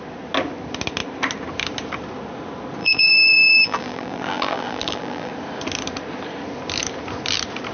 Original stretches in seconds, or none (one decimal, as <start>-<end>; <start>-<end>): 0.0-2.8; 5.3-7.7